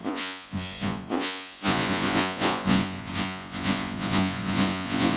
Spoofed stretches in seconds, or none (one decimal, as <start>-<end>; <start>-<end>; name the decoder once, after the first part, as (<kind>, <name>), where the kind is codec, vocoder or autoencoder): 0.0-5.2 (vocoder, Vocos)